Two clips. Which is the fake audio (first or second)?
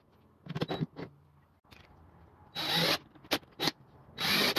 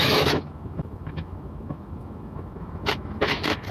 second